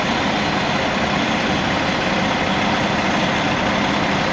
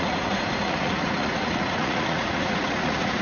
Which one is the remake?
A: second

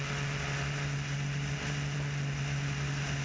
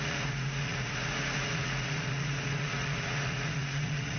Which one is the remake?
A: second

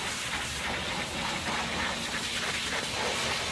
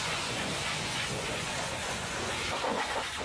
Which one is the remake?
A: second